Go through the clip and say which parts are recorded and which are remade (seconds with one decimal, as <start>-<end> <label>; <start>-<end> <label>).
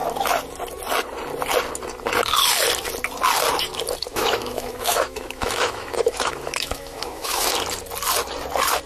0.0-4.1 recorded; 4.1-7.5 remade; 7.5-8.9 recorded